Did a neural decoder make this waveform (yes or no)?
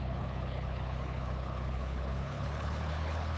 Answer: yes